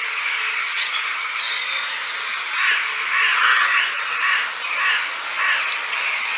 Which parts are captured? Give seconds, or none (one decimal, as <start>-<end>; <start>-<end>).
0.0-0.6; 1.4-3.3; 3.8-6.4